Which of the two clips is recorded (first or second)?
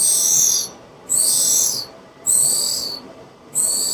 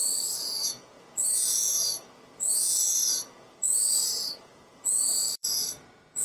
first